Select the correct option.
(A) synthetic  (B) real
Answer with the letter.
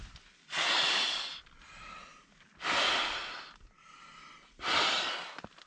B